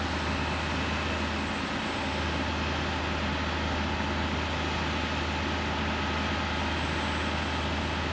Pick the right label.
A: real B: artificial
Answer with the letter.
A